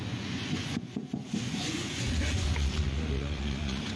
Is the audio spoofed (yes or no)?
yes